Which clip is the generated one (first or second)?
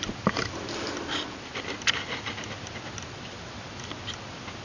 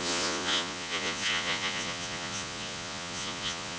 second